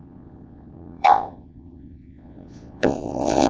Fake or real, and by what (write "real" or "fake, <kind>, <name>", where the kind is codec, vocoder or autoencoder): fake, vocoder, Vocos